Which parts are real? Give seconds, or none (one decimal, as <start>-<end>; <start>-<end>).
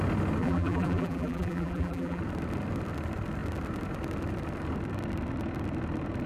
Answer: 0.0-0.4; 2.2-6.3